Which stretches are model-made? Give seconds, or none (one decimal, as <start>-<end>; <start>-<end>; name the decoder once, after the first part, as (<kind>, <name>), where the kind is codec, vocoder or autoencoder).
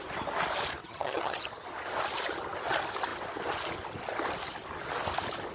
0.8-1.4 (vocoder, HiFi-GAN)